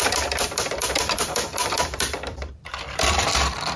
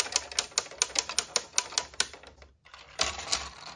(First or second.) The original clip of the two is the second